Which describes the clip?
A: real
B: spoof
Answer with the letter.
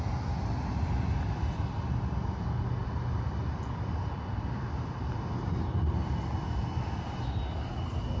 A